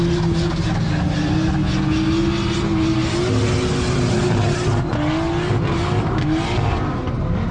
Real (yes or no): yes